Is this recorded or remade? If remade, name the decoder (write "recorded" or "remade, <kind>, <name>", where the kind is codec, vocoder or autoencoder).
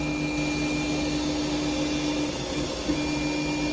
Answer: recorded